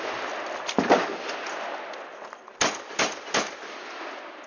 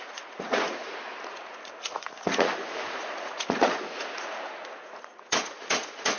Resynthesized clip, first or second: second